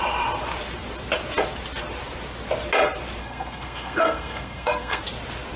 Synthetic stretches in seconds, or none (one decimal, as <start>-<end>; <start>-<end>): 3.2-5.0